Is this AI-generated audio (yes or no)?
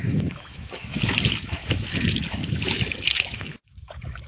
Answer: yes